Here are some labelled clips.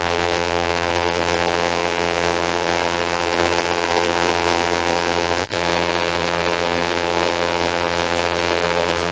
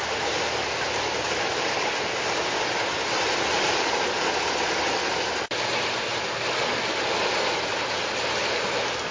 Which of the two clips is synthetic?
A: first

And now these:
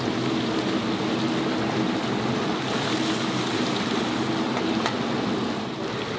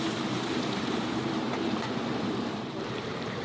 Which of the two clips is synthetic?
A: second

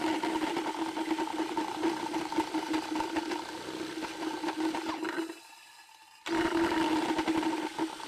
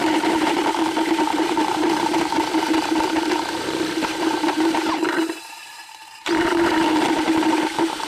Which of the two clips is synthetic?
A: second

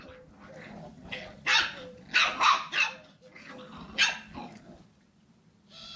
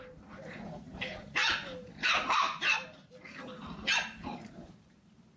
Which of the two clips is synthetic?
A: second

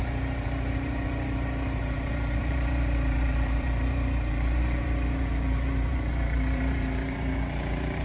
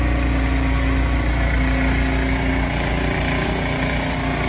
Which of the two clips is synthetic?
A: first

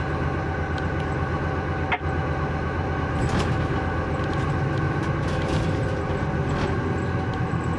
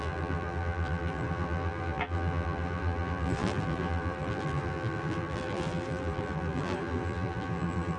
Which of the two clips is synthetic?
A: second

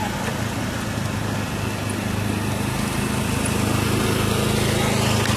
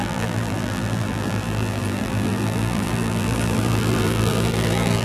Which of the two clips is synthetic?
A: second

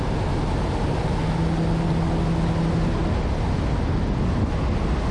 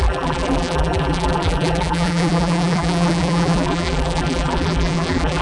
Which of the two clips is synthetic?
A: second